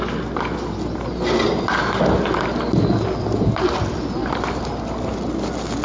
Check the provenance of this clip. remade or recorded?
recorded